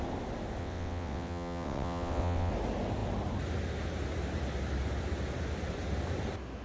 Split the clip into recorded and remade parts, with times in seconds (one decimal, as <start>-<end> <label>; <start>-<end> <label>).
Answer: 0.0-0.6 recorded; 0.6-2.5 remade; 2.5-6.6 recorded